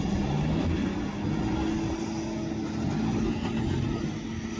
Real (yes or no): yes